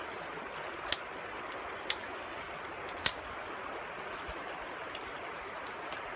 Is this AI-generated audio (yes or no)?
no